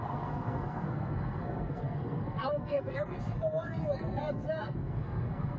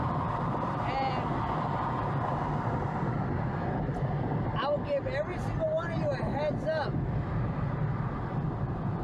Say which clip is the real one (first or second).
second